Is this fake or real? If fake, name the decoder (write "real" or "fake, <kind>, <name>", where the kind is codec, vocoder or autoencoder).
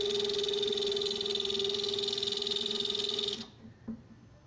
real